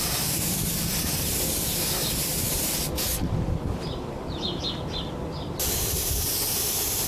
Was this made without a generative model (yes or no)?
no